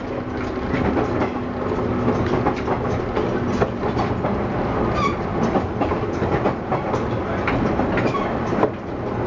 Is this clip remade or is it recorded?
recorded